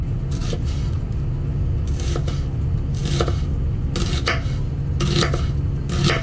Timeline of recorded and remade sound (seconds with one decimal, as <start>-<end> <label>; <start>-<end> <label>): 0.0-6.2 recorded